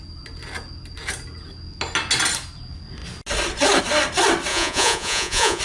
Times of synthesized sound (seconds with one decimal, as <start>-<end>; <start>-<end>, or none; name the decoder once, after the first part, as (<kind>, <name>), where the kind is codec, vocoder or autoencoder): 4.5-5.6 (vocoder, Vocos)